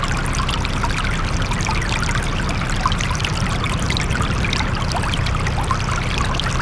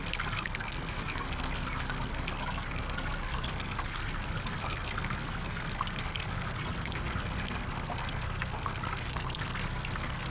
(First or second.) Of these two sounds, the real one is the first